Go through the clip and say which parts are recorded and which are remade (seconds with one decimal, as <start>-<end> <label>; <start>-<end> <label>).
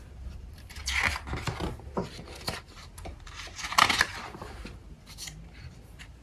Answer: 0.0-0.8 remade; 0.8-2.6 recorded; 2.6-6.2 remade